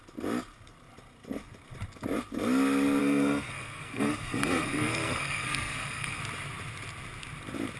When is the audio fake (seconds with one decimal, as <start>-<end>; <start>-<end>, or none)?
3.0-6.2